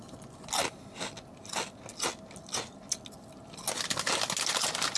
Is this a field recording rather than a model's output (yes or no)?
yes